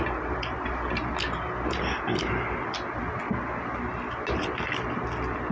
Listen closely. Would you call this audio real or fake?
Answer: real